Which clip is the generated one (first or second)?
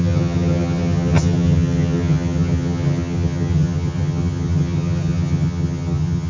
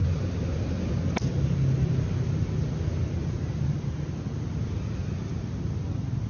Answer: first